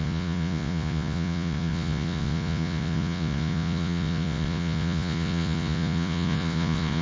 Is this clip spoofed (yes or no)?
yes